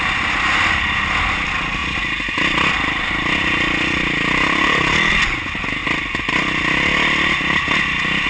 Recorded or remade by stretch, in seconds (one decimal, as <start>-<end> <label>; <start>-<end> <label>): 0.0-8.3 recorded